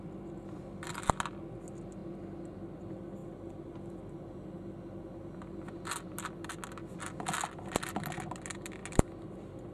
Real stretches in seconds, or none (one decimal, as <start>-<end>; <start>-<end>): 0.0-9.7